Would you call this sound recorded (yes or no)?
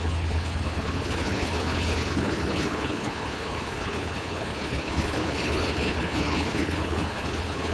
no